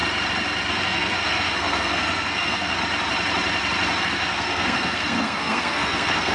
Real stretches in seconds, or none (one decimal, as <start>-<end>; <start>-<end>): 0.0-0.7; 2.8-4.0